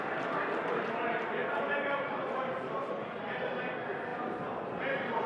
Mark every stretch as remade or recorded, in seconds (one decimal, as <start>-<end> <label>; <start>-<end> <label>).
0.0-1.4 recorded; 1.4-3.6 remade; 3.6-4.1 recorded; 4.1-4.8 remade; 4.8-5.3 recorded